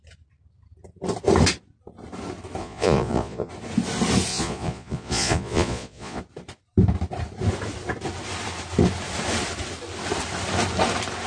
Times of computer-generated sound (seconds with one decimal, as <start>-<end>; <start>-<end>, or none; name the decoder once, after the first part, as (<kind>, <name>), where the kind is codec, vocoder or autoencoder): 2.6-3.5 (vocoder, Vocos); 4.3-6.2